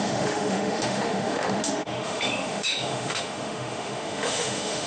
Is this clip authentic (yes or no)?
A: no